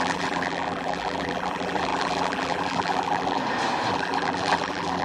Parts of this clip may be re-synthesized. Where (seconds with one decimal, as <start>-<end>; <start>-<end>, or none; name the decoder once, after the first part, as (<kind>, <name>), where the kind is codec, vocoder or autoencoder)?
0.0-3.4 (vocoder, BigVGAN v2); 3.9-5.0